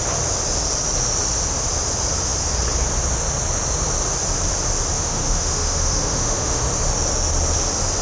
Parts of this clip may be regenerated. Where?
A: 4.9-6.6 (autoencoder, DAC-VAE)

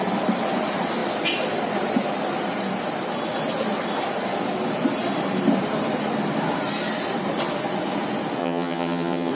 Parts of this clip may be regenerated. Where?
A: 8.4-9.3 (vocoder, HiFi-GAN)

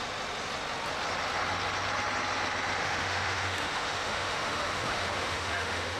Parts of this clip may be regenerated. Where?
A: 2.8-6.0 (autoencoder, DAC-VAE)